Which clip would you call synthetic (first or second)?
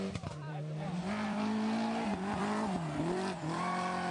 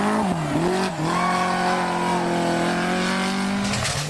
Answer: first